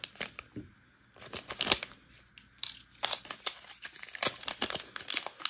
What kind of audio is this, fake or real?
real